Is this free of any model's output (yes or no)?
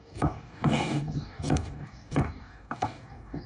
no